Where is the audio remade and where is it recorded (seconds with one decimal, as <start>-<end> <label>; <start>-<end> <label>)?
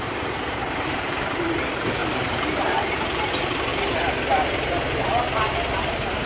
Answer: 0.0-3.7 remade; 3.7-6.3 recorded